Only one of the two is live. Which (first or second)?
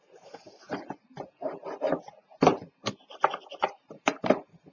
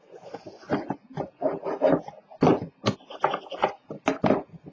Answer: second